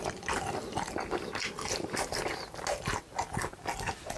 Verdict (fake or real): real